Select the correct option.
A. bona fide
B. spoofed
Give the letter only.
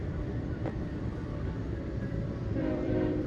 B